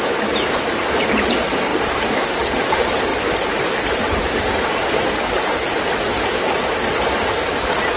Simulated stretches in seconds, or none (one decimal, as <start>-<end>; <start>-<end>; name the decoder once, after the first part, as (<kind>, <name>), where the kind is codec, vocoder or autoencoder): 0.0-1.7 (vocoder, BigVGAN v2); 2.2-3.1; 3.8-8.0